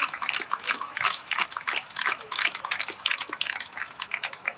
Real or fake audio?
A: fake